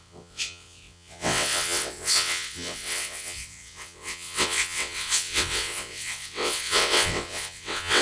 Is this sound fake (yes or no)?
yes